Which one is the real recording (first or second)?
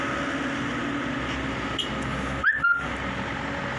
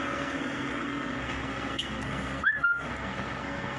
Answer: first